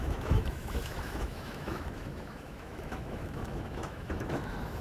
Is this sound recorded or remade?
remade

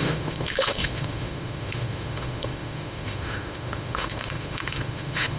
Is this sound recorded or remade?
remade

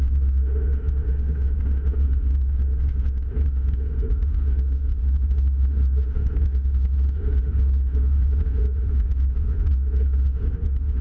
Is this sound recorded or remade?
remade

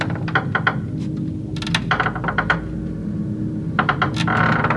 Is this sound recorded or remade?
recorded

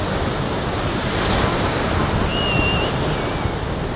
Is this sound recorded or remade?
recorded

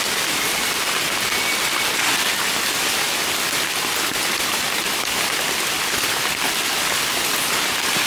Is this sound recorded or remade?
recorded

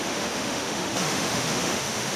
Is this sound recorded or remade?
remade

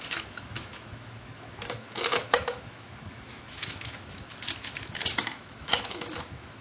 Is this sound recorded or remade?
remade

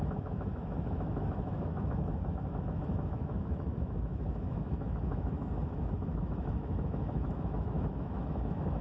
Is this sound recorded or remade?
remade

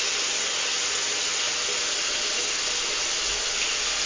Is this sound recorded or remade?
recorded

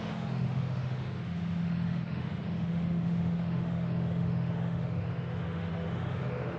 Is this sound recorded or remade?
remade